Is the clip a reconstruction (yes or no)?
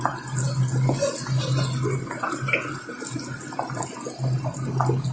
no